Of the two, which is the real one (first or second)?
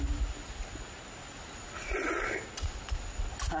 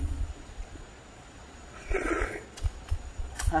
first